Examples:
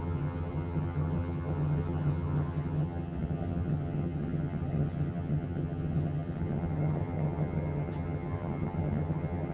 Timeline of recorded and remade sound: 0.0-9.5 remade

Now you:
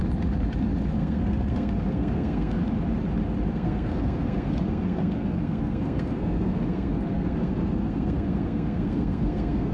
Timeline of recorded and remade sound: 0.0-0.9 recorded; 0.9-2.6 remade; 2.6-3.5 recorded; 3.5-9.7 remade

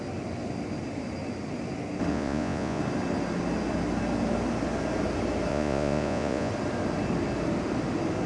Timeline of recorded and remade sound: 0.0-2.1 recorded; 2.1-2.8 remade; 2.8-5.5 recorded; 5.5-6.5 remade; 6.5-8.3 recorded

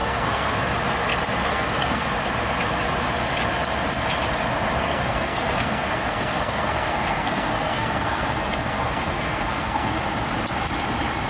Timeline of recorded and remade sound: 0.0-0.7 remade; 0.7-1.5 recorded; 1.5-2.1 remade; 2.1-4.8 recorded; 4.8-9.9 remade; 9.9-11.3 recorded

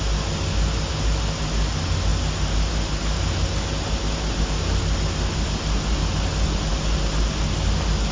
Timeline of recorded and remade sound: 0.0-8.1 recorded

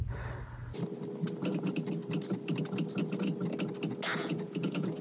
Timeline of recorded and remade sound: 0.0-4.1 recorded; 4.1-5.0 remade